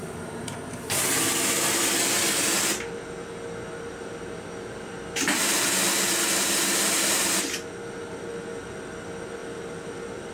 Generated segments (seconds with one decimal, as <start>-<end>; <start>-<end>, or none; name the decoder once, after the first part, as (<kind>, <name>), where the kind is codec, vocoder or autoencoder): 9.4-10.3 (vocoder, BigVGAN v2)